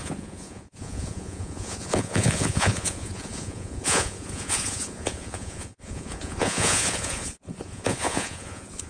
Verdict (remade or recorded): remade